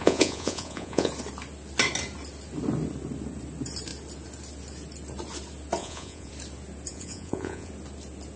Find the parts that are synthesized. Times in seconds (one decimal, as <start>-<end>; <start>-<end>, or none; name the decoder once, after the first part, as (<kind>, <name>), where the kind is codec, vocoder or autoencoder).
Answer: 0.0-1.1 (vocoder, Vocos); 5.8-6.3; 6.9-7.7